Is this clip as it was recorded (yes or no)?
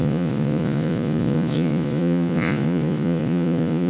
no